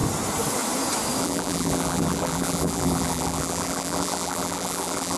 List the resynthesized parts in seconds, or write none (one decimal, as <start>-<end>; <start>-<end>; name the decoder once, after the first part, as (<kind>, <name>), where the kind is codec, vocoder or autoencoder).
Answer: 1.2-5.2 (vocoder, BigVGAN v2)